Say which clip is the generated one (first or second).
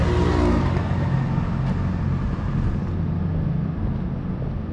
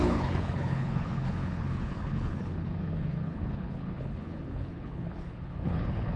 second